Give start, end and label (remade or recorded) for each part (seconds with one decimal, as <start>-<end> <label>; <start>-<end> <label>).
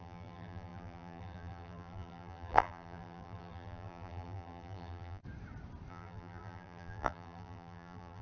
0.0-5.2 remade; 5.2-5.9 recorded; 5.9-8.2 remade